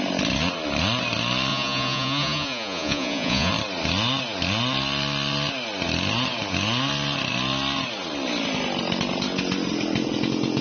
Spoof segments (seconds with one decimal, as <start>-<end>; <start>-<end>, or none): 1.5-3.5